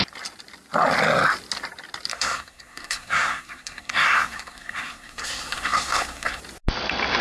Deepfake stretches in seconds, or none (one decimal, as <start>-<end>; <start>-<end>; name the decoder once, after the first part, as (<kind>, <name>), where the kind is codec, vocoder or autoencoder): 2.1-6.4 (codec, SNAC)